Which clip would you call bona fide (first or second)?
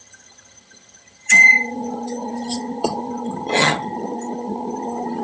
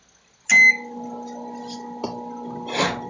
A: second